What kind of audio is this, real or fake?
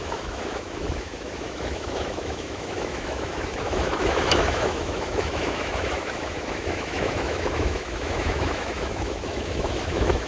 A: fake